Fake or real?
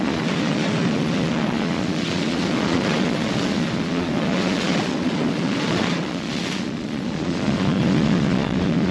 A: fake